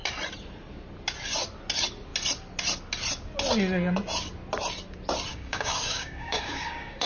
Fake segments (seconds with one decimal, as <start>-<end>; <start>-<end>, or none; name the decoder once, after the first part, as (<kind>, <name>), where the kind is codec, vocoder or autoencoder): 5.3-7.1 (codec, DAC)